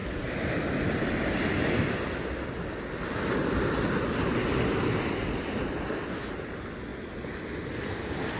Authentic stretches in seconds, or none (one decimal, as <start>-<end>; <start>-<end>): 0.0-8.4